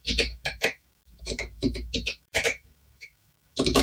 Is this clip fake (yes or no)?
yes